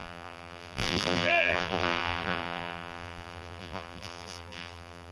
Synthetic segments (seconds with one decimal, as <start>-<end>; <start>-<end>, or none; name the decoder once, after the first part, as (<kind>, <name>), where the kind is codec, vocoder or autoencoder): 0.0-5.1 (vocoder, BigVGAN v2)